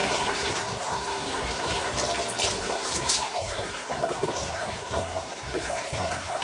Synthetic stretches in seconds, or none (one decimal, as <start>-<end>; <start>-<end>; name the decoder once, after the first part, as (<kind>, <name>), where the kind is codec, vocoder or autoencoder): 0.0-1.9 (codec, SNAC); 2.6-6.4